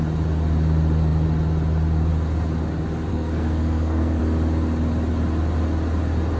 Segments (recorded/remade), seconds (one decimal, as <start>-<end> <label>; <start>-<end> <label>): 0.0-3.1 recorded; 3.1-4.2 remade; 4.2-6.4 recorded